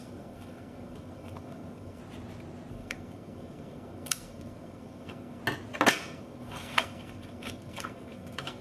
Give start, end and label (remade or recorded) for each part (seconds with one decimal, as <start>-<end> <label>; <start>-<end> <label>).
0.0-2.0 remade; 2.0-2.7 recorded; 2.7-5.4 remade; 5.4-5.9 recorded; 5.9-8.6 remade